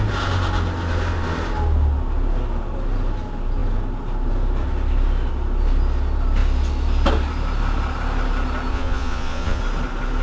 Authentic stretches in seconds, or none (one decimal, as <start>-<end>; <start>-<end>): 0.0-8.7; 9.6-10.2